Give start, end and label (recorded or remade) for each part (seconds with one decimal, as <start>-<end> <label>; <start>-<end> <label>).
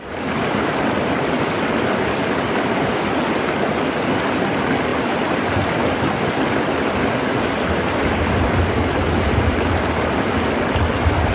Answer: 0.0-11.3 recorded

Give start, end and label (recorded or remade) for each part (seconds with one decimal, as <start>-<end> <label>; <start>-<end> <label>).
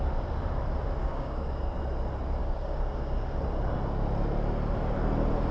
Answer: 0.0-1.0 recorded; 1.0-1.8 remade; 1.8-2.4 recorded; 2.4-3.4 remade; 3.4-5.5 recorded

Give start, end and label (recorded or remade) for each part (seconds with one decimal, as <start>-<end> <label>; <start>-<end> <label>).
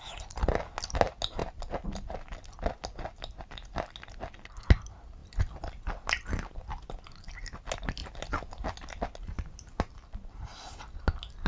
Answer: 0.0-11.5 recorded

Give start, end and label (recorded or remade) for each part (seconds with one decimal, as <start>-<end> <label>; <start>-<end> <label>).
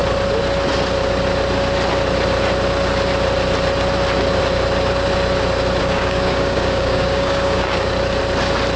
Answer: 0.0-5.8 recorded; 5.8-7.9 remade; 7.9-8.8 recorded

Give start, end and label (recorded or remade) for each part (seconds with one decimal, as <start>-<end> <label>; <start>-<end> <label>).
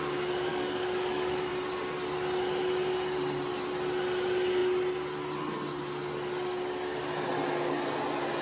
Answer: 0.0-0.5 recorded; 0.5-1.5 remade; 1.5-8.4 recorded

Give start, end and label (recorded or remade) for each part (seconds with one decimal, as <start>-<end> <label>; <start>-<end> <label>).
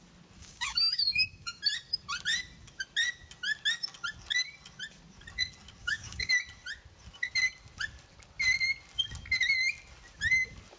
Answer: 0.0-0.4 recorded; 0.4-1.6 remade; 1.6-5.8 recorded; 5.8-6.3 remade; 6.3-10.8 recorded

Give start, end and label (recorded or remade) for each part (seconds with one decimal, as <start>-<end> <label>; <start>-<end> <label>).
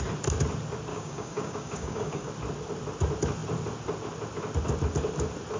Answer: 0.0-0.9 recorded; 0.9-2.3 remade; 2.3-5.6 recorded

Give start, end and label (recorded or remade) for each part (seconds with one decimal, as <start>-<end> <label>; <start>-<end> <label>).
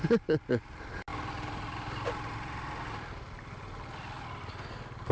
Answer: 0.0-5.1 recorded